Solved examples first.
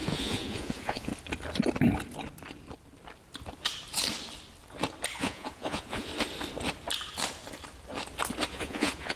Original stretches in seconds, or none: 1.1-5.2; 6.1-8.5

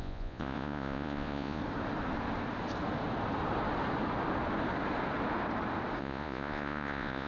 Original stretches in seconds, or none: 1.6-6.0

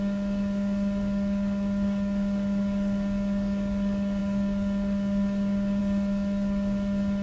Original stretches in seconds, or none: none

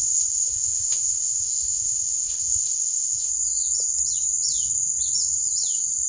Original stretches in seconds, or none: 3.3-6.1

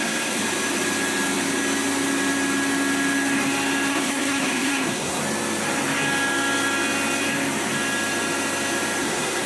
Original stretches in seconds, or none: 0.4-3.9; 5.2-9.0

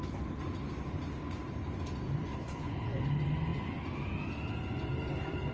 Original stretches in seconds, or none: 0.0-2.3; 3.0-5.5

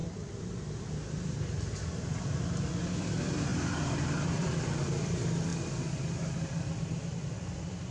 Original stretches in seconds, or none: 0.0-2.9; 5.5-7.2